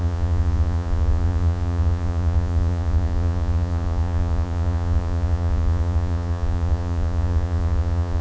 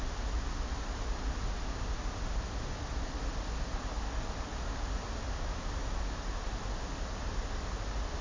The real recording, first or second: second